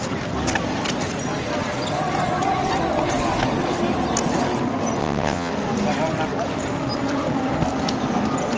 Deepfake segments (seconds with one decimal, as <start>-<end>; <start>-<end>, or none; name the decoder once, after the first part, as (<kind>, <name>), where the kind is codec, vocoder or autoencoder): 5.0-5.5 (vocoder, WaveNeXt)